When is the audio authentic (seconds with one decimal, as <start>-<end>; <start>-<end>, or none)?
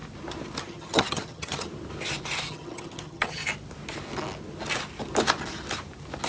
0.0-0.6; 1.7-2.4; 3.4-6.3